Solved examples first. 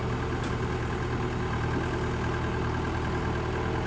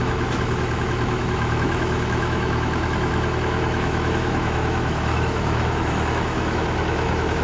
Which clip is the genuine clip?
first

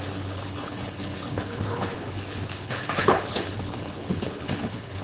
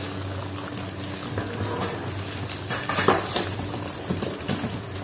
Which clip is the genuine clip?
second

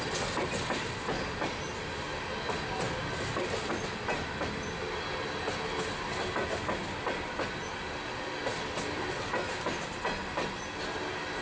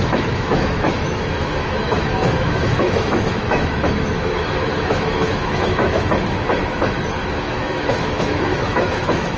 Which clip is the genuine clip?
first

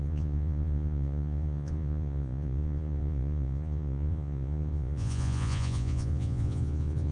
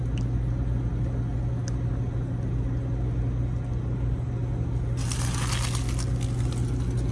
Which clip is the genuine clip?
second